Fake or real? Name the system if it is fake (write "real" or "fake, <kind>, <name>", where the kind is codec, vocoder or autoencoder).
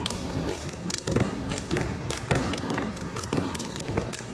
fake, codec, SNAC